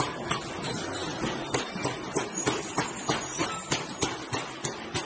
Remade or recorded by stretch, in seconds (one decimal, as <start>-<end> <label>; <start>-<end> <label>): 0.0-5.1 recorded